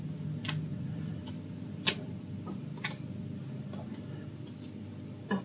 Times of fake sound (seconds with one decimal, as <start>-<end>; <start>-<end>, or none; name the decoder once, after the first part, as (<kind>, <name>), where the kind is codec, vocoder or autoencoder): none